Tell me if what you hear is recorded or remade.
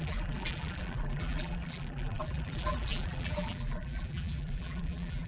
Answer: remade